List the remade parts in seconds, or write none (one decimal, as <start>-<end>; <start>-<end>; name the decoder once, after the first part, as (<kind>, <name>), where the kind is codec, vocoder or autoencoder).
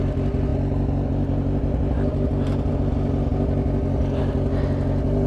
none